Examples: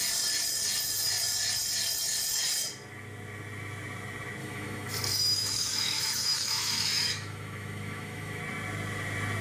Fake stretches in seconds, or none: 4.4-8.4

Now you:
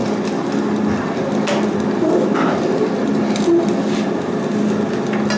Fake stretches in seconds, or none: none

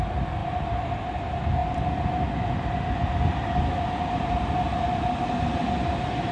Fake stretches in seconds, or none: none

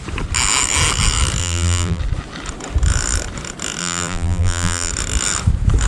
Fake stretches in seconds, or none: 1.4-2.0; 3.8-4.9

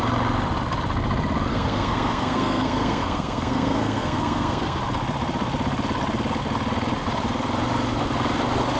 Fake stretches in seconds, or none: 1.5-4.8

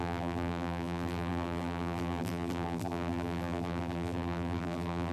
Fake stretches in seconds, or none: 0.0-5.1

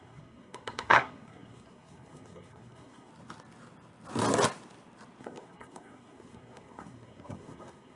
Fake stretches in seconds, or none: 0.0-3.1; 5.2-8.0

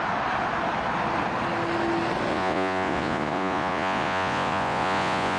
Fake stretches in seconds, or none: 2.3-5.4